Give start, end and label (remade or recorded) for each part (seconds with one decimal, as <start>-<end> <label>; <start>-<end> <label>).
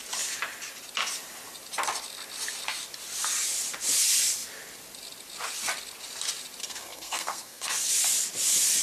0.0-6.6 recorded; 6.6-7.9 remade; 7.9-8.8 recorded